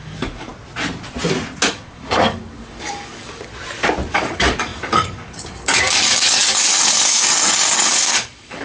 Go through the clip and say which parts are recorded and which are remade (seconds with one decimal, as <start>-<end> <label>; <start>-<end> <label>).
0.0-0.5 remade; 0.5-1.7 recorded; 1.7-3.5 remade; 3.5-4.1 recorded; 4.1-8.6 remade